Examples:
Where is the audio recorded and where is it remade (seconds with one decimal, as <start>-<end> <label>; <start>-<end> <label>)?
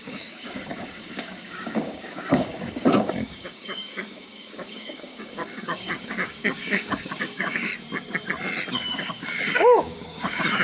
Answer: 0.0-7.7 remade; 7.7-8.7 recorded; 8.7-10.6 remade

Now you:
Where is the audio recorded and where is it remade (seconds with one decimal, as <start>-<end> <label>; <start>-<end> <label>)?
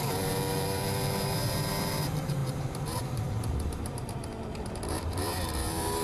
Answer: 0.0-6.0 remade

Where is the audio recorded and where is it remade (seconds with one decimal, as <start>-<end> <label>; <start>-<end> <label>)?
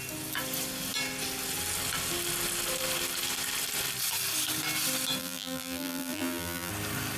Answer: 0.0-5.2 recorded; 5.2-6.7 remade; 6.7-7.2 recorded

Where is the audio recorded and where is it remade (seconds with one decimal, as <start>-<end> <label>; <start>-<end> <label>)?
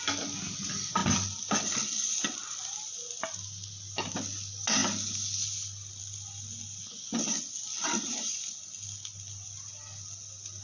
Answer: 0.0-10.6 recorded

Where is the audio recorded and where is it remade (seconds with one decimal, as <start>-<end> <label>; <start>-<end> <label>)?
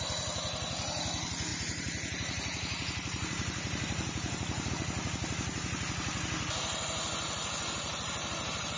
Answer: 0.0-1.5 recorded; 1.5-4.7 remade; 4.7-8.8 recorded